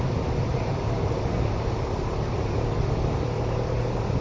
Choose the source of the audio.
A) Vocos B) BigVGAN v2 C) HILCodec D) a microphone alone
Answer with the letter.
D